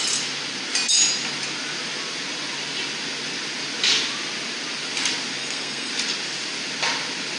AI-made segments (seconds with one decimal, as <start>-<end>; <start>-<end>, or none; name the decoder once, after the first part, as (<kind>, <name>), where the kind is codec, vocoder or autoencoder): 5.4-5.9 (codec, SNAC)